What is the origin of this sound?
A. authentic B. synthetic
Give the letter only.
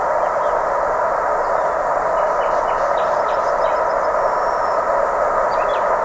A